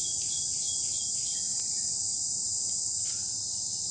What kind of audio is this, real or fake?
fake